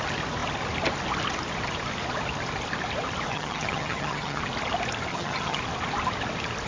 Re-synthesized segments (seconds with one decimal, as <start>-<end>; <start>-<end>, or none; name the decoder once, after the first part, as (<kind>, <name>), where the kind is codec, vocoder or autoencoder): 3.3-4.4 (vocoder, HiFi-GAN); 5.1-5.6